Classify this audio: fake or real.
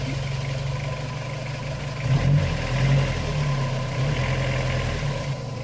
real